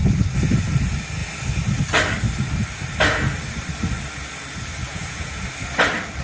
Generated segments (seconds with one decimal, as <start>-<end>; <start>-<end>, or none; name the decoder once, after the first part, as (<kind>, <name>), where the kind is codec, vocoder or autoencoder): 4.8-5.4 (vocoder, Vocos)